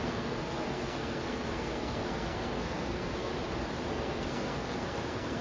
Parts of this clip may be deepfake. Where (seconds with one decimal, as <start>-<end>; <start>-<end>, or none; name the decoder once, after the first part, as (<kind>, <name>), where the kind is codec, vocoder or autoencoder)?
0.0-3.3 (codec, SNAC); 3.9-5.4